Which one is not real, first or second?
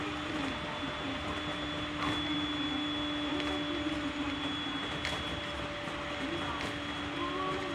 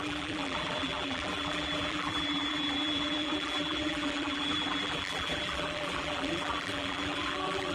second